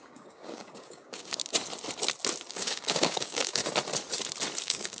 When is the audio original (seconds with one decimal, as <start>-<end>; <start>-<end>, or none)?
1.4-2.5; 3.6-4.6